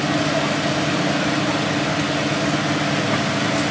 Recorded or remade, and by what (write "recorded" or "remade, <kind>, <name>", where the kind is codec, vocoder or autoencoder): recorded